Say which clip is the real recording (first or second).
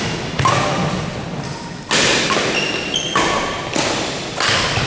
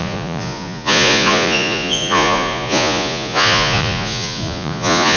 first